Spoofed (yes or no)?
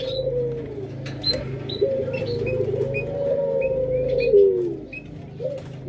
no